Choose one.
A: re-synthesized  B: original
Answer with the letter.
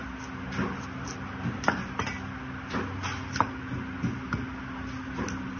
B